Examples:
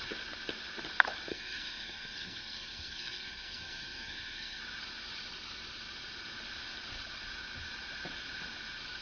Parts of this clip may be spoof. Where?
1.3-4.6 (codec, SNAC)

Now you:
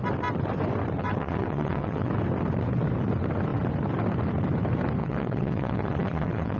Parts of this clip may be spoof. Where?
1.0-2.1 (vocoder, WaveNeXt); 5.0-6.6

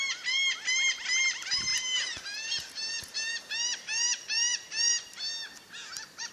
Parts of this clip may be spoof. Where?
1.7-5.3 (vocoder, BigVGAN v2)

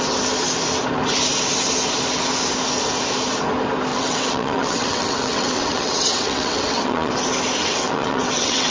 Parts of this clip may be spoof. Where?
3.9-7.1 (vocoder, WaveNeXt); 7.6-8.7

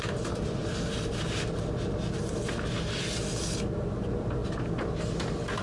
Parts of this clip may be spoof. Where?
none